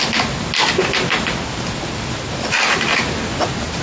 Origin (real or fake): real